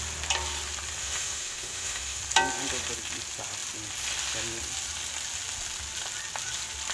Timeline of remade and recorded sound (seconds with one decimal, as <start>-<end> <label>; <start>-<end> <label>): 0.0-1.0 recorded; 1.0-2.2 remade; 2.2-6.9 recorded

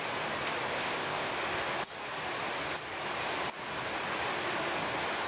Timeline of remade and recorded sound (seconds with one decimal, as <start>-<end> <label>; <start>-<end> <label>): 0.0-0.7 recorded; 0.7-1.3 remade; 1.3-5.3 recorded

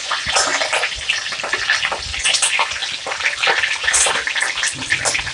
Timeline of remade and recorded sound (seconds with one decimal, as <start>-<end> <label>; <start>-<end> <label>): 0.0-0.5 remade; 0.5-2.2 recorded; 2.2-2.8 remade; 2.8-3.8 recorded; 3.8-4.2 remade; 4.2-5.3 recorded

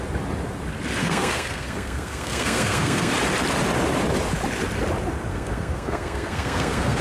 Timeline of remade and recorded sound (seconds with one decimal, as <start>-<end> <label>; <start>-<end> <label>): 0.0-1.0 recorded; 1.0-3.1 remade; 3.1-5.3 recorded; 5.3-7.0 remade

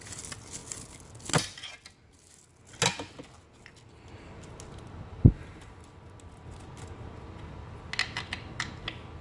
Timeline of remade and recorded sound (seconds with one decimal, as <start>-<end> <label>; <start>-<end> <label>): 0.0-9.2 recorded

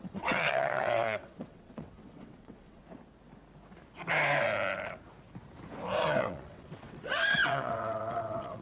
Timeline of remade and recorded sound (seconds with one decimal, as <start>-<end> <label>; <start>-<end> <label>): 0.0-2.8 remade; 2.8-6.0 recorded; 6.0-8.6 remade

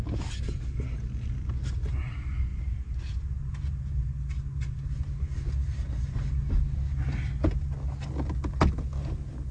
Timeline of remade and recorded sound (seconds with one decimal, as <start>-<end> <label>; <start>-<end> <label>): 0.0-9.5 recorded

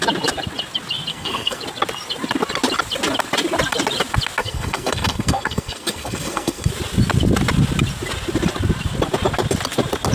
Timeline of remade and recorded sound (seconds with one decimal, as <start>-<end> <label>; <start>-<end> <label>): 0.0-1.1 recorded; 1.1-1.6 remade; 1.6-4.4 recorded; 4.4-6.7 remade; 6.7-10.1 recorded